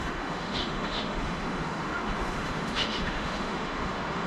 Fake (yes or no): yes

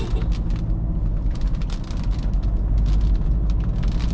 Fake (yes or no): no